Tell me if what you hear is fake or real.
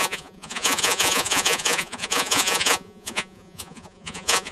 fake